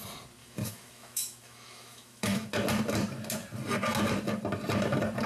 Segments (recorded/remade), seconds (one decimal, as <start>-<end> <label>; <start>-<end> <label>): 0.0-0.4 recorded; 0.4-2.5 remade; 2.5-5.3 recorded